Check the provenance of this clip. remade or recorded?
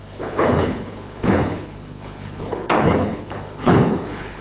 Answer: remade